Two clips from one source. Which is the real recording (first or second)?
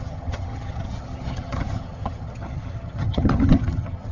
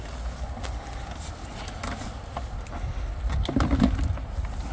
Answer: second